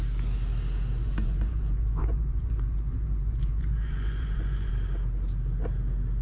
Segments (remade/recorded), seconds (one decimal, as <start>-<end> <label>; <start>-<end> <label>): 0.0-1.0 recorded; 1.0-4.7 remade; 4.7-6.2 recorded